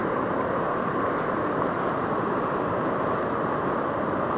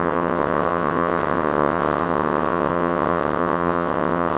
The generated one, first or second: second